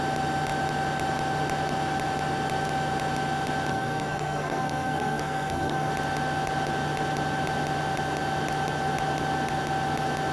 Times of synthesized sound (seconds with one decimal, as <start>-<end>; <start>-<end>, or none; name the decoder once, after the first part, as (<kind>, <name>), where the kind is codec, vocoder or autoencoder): 3.7-5.9 (codec, SNAC)